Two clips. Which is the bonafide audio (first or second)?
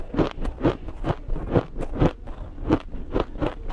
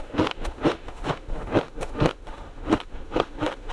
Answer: first